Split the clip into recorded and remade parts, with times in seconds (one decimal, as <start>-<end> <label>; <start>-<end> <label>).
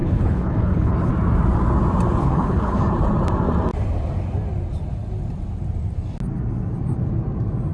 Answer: 0.0-1.1 remade; 1.1-2.2 recorded; 2.2-2.8 remade; 2.8-7.7 recorded